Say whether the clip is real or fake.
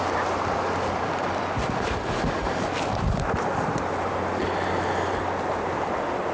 real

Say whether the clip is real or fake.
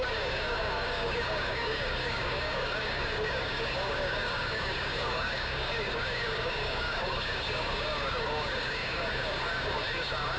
fake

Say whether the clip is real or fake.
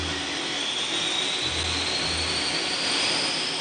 real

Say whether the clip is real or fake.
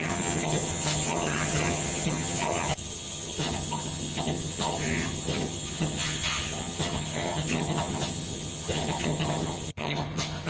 fake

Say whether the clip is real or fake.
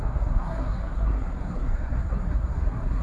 fake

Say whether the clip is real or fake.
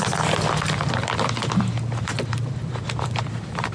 fake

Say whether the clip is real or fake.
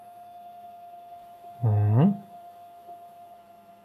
fake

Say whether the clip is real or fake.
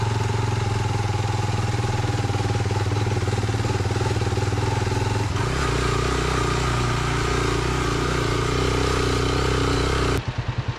real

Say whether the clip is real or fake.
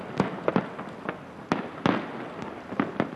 real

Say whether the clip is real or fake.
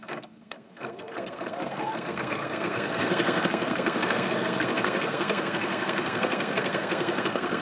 fake